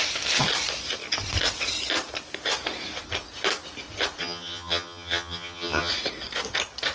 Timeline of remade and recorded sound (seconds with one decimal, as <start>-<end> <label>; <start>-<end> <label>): 0.0-4.2 recorded; 4.2-5.9 remade; 5.9-6.9 recorded